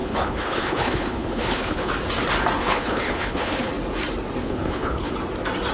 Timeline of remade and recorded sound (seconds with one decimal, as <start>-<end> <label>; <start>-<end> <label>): 0.0-1.9 remade; 1.9-2.6 recorded; 2.6-3.7 remade; 3.7-4.4 recorded; 4.4-5.1 remade; 5.1-5.7 recorded